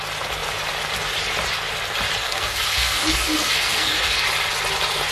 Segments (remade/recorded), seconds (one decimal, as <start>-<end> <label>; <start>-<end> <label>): 0.0-2.2 recorded; 2.2-4.2 remade; 4.2-5.1 recorded